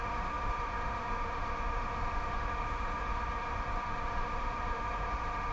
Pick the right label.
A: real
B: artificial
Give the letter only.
B